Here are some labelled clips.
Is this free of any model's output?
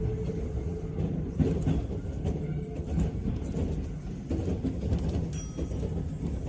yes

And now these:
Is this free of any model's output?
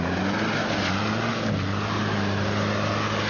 yes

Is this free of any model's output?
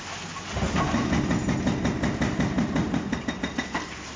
yes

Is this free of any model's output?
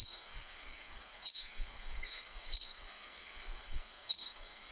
no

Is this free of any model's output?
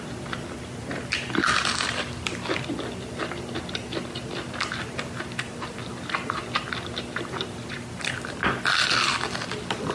yes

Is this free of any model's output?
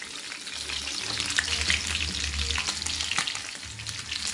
yes